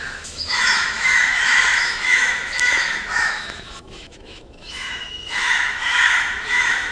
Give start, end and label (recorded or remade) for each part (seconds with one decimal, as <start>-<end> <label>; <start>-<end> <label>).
0.0-6.9 remade